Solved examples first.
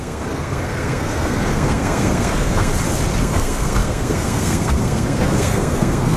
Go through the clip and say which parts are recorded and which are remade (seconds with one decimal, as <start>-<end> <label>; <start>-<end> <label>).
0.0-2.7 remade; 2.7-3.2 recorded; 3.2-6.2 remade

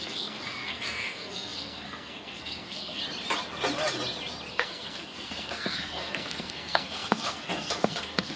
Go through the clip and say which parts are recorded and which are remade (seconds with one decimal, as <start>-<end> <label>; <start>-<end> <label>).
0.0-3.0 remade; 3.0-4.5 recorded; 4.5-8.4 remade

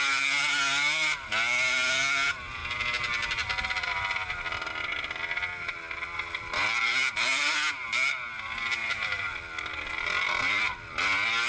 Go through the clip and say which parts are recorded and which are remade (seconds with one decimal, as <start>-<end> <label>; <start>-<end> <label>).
0.0-11.5 recorded